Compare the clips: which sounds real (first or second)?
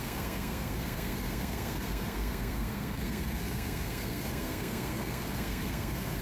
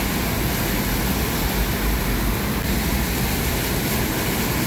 second